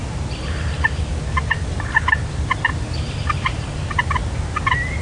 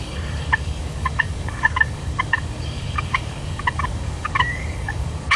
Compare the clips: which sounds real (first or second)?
first